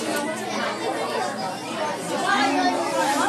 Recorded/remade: recorded